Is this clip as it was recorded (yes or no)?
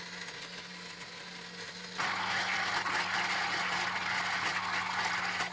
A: yes